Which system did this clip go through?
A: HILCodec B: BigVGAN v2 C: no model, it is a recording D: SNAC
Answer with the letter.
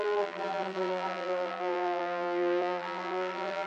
B